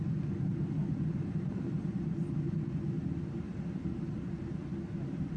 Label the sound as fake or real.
real